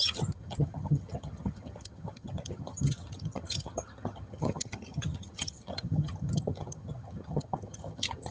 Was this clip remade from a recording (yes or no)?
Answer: yes